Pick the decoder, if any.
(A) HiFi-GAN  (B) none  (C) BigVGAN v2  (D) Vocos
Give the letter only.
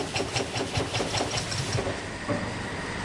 C